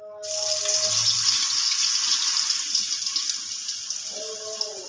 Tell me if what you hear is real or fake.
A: real